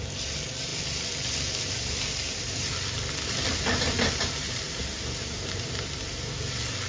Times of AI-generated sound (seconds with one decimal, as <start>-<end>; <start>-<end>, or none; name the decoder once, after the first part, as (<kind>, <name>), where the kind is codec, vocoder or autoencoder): none